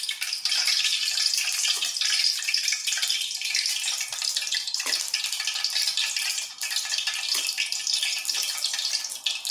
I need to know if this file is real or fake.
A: real